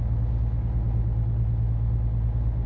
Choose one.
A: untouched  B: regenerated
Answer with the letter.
A